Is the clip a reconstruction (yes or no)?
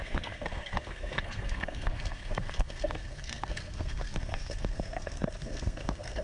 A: yes